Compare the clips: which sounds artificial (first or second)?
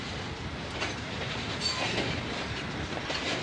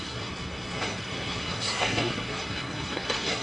second